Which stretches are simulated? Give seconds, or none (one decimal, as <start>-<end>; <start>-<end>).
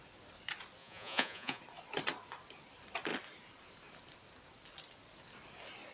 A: 0.8-1.6